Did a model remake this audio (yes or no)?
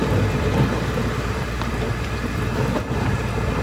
yes